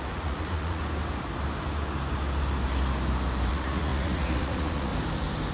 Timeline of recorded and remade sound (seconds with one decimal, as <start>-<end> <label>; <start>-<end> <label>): 0.0-0.8 remade; 0.8-3.5 recorded; 3.5-4.9 remade; 4.9-5.5 recorded